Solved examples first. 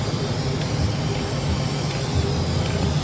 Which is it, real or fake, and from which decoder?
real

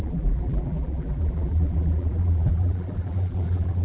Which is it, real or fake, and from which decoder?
fake, vocoder, BigVGAN v2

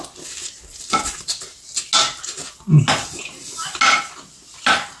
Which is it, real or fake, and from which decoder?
real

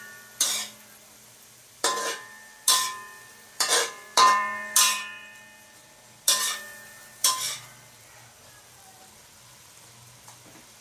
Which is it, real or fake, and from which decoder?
fake, vocoder, BigVGAN v2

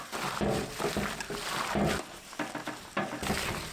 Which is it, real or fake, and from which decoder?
real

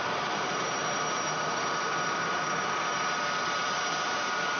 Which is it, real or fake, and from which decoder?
fake, vocoder, BigVGAN v2